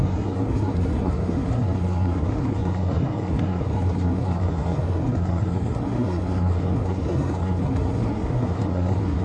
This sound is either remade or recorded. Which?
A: remade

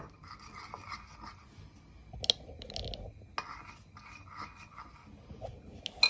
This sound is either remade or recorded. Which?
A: recorded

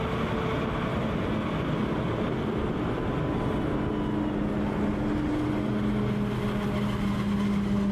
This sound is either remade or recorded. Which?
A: recorded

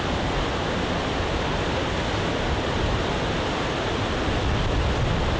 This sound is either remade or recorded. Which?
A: recorded